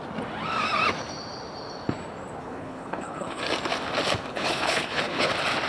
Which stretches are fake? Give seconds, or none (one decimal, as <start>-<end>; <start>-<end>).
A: 2.4-3.4; 4.3-5.3